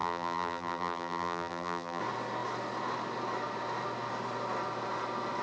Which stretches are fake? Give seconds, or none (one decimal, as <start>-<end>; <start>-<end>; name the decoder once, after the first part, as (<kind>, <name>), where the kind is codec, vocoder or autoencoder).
0.0-2.0 (vocoder, BigVGAN v2)